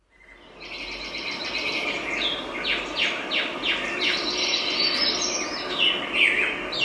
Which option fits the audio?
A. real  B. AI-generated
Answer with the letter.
A